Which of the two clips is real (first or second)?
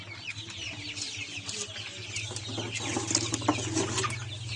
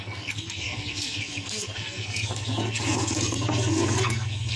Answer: first